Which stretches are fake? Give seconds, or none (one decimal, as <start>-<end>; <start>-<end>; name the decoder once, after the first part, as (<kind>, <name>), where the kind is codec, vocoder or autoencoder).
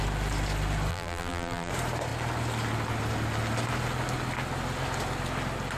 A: 0.9-1.7 (vocoder, BigVGAN v2)